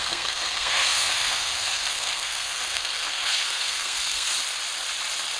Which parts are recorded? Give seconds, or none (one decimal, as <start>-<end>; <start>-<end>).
4.3-5.4